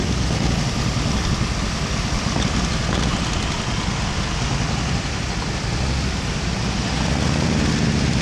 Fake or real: real